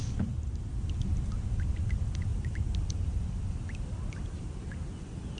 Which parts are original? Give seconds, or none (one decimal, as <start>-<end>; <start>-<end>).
0.0-2.3; 3.5-5.4